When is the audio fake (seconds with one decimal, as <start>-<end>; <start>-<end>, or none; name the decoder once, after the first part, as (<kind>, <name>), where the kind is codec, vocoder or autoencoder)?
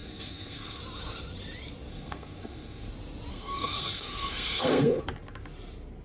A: 0.0-0.8 (codec, SNAC); 1.9-2.9; 3.3-5.0